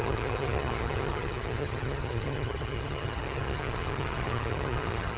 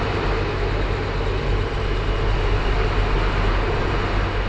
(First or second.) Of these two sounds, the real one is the second